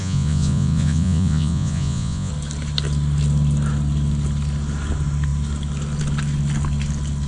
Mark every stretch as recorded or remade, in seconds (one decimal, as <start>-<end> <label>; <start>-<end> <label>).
0.0-2.3 remade; 2.3-7.3 recorded